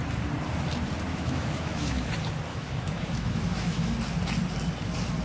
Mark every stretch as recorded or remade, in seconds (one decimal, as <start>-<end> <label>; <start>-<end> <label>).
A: 0.0-1.1 recorded; 1.1-2.1 remade; 2.1-2.5 recorded; 2.5-3.9 remade; 3.9-5.2 recorded